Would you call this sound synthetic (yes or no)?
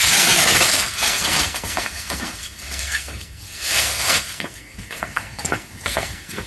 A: yes